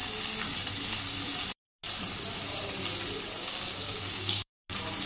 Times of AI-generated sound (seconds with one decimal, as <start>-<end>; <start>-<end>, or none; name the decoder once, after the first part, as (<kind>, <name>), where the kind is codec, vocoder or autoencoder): 3.4-4.5 (codec, DAC)